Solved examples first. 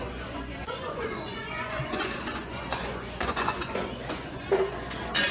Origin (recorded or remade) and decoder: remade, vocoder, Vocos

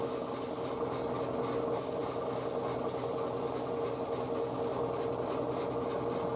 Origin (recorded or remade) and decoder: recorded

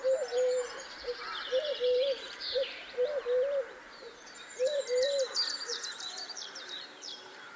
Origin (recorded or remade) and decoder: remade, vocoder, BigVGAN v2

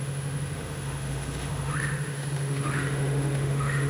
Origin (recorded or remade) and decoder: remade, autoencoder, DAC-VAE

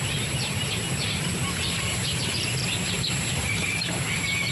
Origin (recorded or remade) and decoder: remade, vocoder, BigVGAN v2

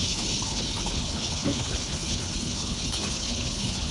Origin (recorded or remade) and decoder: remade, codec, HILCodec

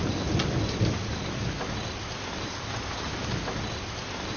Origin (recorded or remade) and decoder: recorded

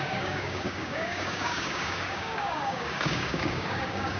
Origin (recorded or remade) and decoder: remade, codec, DAC